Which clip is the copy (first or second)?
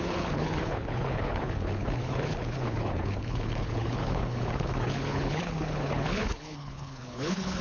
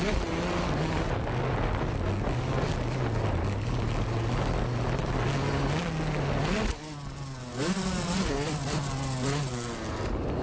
first